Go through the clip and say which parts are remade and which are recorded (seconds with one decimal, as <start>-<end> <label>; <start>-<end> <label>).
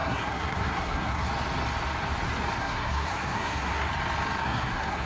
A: 0.0-1.3 remade; 1.3-2.6 recorded; 2.6-3.9 remade; 3.9-4.4 recorded; 4.4-5.1 remade